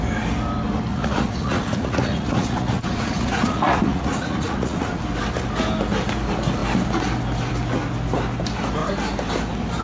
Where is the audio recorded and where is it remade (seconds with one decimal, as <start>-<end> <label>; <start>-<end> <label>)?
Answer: 0.0-0.9 recorded; 0.9-5.0 remade; 5.0-9.8 recorded